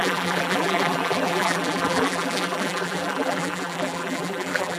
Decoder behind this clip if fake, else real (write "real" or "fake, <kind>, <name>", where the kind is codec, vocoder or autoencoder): fake, vocoder, BigVGAN v2